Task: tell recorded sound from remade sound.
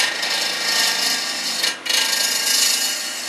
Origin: recorded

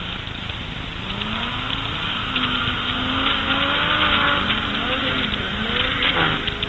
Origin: recorded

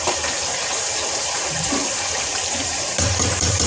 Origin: remade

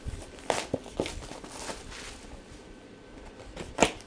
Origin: recorded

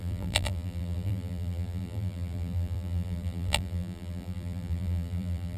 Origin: remade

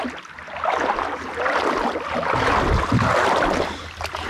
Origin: recorded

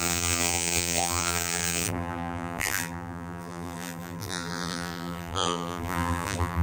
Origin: remade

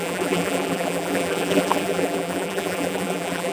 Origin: remade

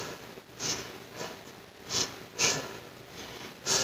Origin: recorded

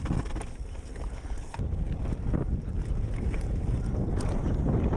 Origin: recorded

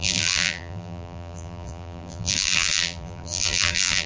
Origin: remade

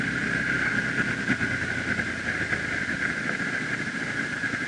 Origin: recorded